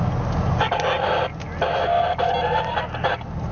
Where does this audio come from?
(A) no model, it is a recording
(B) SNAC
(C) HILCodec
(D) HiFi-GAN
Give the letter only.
A